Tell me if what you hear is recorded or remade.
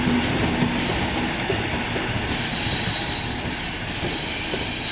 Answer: recorded